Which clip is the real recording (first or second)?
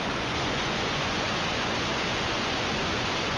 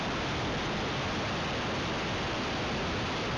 second